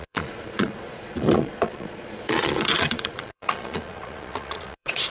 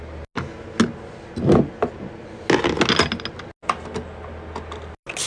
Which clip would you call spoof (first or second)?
first